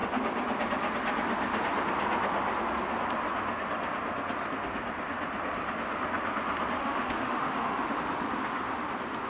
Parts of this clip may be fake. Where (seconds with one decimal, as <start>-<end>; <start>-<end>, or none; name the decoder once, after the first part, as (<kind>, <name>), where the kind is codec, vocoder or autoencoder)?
6.8-8.0 (autoencoder, DAC-VAE)